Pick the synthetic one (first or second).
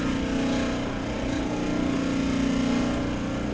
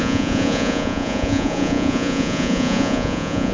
second